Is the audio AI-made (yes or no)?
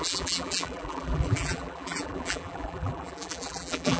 yes